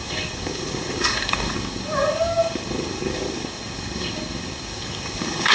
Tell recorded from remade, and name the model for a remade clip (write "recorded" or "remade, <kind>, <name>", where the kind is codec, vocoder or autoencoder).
remade, codec, DAC